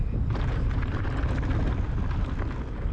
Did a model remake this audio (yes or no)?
no